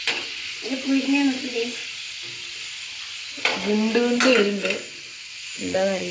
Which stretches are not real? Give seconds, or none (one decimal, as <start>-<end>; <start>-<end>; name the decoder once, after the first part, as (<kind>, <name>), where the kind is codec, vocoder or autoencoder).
0.0-1.8 (vocoder, Vocos); 3.1-3.5; 5.3-6.1